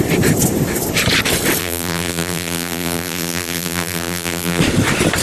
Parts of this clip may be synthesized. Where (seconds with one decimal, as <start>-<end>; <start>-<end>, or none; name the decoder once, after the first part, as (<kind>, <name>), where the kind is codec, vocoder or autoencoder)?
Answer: 1.6-4.6 (vocoder, BigVGAN v2)